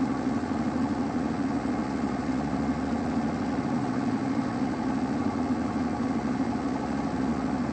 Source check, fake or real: fake